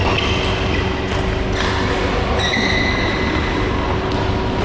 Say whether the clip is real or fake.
real